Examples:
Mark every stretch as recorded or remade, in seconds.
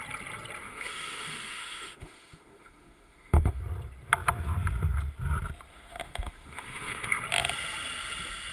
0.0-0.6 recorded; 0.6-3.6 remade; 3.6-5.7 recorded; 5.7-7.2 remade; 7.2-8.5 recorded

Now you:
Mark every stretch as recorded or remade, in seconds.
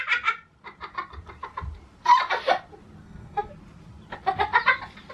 0.0-3.0 recorded; 3.0-3.5 remade; 3.5-5.1 recorded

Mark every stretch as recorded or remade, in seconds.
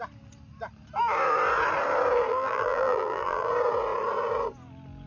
0.0-2.3 recorded; 2.3-3.5 remade; 3.5-5.1 recorded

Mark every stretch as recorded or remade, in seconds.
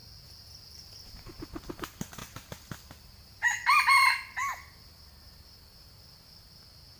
0.0-0.9 remade; 0.9-2.2 recorded; 2.2-2.8 remade; 2.8-7.0 recorded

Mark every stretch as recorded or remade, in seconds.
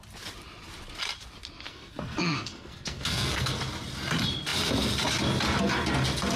0.0-1.7 recorded; 1.7-3.6 remade; 3.6-6.4 recorded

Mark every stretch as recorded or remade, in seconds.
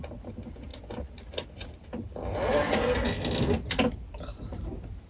0.0-5.1 recorded